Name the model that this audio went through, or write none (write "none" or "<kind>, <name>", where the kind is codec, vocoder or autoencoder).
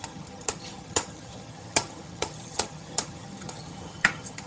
vocoder, HiFi-GAN